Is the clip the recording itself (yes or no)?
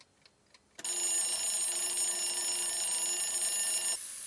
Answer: yes